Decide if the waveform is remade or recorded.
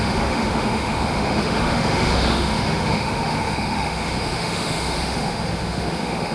remade